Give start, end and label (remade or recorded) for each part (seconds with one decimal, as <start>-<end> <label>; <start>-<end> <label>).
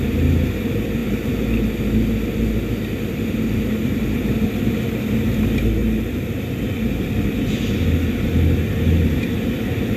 0.0-10.0 recorded